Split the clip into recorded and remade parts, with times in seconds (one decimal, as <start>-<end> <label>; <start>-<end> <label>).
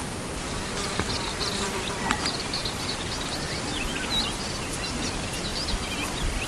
0.0-0.6 remade; 0.6-1.5 recorded; 1.5-2.6 remade; 2.6-5.0 recorded; 5.0-5.5 remade; 5.5-6.5 recorded